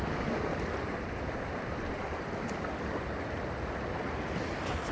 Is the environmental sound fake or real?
real